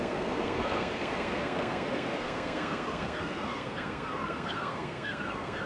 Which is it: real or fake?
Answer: fake